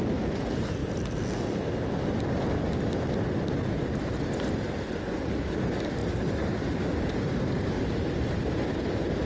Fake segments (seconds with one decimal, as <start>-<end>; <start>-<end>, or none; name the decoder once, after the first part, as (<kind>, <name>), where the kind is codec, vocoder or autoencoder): 6.0-8.8 (vocoder, BigVGAN v2)